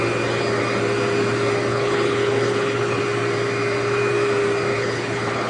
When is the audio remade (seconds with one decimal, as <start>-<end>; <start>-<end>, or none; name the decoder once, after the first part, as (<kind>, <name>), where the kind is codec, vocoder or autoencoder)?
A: 1.7-3.0 (codec, HILCodec); 4.7-5.5